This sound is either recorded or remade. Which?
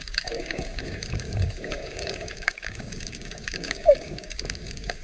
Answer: remade